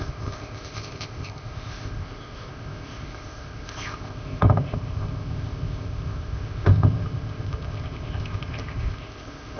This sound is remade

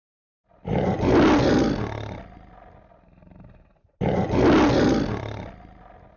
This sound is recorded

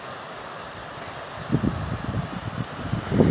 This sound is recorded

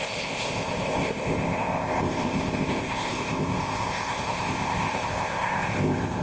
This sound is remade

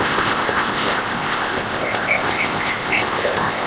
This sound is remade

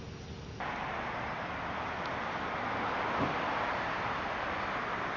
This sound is recorded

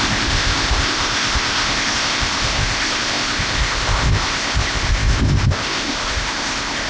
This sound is remade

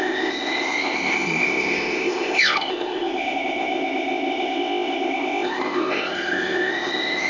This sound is remade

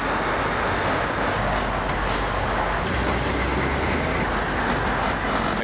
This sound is recorded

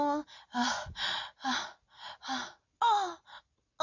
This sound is recorded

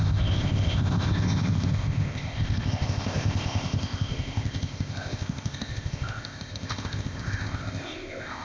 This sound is remade